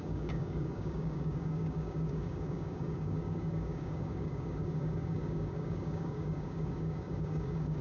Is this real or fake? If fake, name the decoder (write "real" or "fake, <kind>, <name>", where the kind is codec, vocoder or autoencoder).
fake, codec, DAC